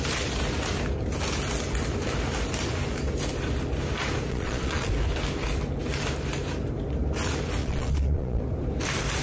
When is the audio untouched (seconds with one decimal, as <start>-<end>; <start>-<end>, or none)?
0.0-4.3; 4.9-7.6; 8.4-9.2